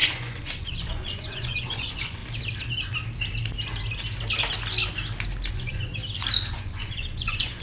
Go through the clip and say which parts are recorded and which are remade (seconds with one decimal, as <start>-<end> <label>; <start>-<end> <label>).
0.0-2.2 remade; 2.2-5.5 recorded; 5.5-5.9 remade; 5.9-6.5 recorded; 6.5-7.6 remade